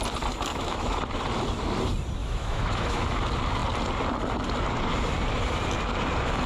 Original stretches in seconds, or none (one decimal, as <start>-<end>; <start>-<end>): 0.0-0.5; 1.0-2.2; 3.2-6.5